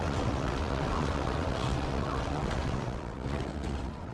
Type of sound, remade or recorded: remade